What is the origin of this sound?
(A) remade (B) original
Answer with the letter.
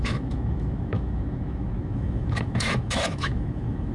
A